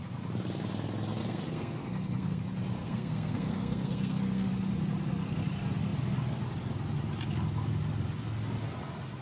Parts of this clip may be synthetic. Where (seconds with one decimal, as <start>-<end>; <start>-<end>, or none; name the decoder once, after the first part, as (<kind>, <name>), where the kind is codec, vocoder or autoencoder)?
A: 1.2-2.4 (codec, SNAC); 2.8-4.5